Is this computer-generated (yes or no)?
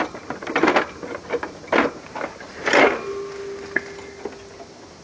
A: no